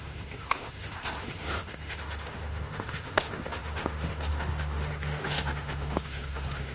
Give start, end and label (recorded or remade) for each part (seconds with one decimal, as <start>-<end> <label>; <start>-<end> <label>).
0.0-6.7 remade